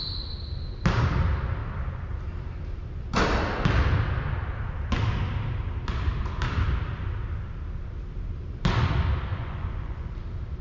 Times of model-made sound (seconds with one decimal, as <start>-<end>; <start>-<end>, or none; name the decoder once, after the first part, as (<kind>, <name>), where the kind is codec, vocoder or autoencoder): 9.3-10.1 (vocoder, Vocos)